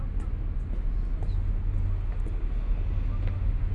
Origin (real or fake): real